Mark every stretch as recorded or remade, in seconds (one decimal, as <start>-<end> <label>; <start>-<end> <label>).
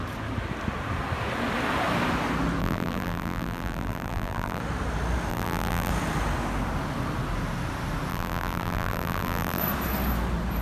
0.0-2.6 recorded; 2.6-4.6 remade; 4.6-5.3 recorded; 5.3-5.9 remade; 5.9-8.1 recorded; 8.1-9.6 remade; 9.6-10.6 recorded